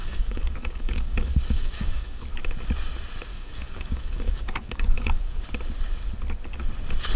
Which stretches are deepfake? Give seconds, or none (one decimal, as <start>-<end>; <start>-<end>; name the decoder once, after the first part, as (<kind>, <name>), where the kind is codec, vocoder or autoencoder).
0.0-2.3 (codec, DAC); 3.3-5.4